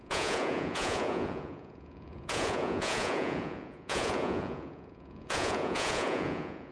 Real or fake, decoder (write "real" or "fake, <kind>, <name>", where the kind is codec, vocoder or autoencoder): fake, vocoder, Vocos